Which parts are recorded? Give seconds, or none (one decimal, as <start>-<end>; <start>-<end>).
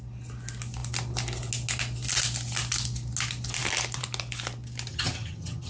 0.0-4.9